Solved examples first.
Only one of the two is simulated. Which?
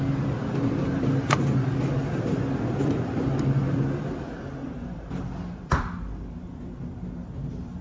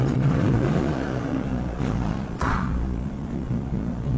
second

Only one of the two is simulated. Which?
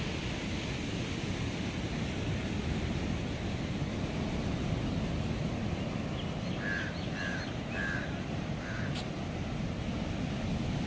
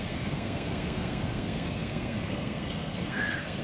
second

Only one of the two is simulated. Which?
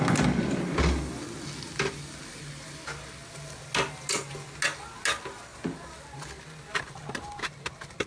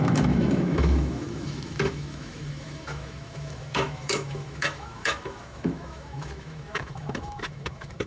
second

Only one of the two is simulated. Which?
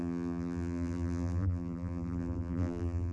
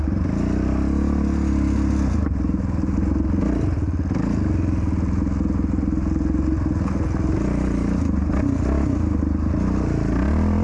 first